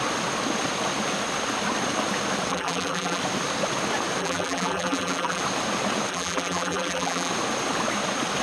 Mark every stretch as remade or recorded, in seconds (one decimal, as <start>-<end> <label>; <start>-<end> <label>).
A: 0.0-2.5 recorded; 2.5-3.2 remade; 3.2-4.2 recorded; 4.2-5.4 remade; 5.4-6.1 recorded; 6.1-7.3 remade; 7.3-8.4 recorded